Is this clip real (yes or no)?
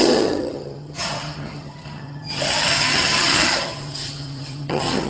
no